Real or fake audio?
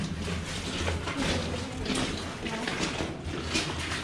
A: real